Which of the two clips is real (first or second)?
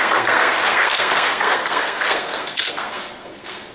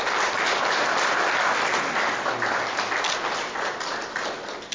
second